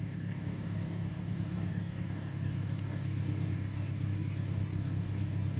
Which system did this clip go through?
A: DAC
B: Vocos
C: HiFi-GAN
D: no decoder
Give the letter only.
A